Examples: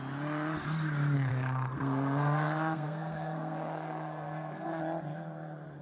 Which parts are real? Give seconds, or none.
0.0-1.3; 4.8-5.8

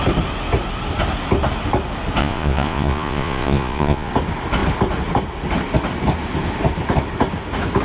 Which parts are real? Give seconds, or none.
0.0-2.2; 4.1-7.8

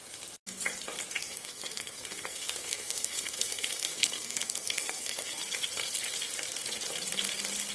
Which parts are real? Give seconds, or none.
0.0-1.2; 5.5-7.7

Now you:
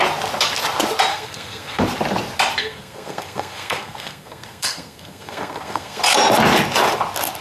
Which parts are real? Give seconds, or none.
0.0-1.1; 1.8-2.6; 6.0-7.4

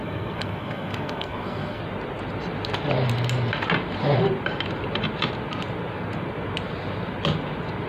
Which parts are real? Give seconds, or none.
1.8-7.9

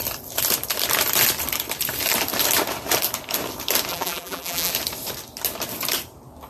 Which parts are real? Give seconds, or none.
0.0-3.9; 4.7-6.5

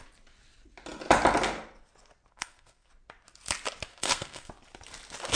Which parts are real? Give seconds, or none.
0.0-2.3; 2.9-3.9; 4.5-5.4

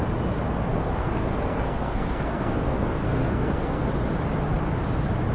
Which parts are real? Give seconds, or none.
0.0-0.7; 3.9-5.3